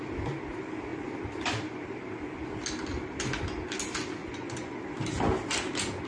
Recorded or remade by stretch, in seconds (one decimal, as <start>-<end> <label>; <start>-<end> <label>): 0.0-4.2 recorded; 4.2-4.8 remade; 4.8-6.1 recorded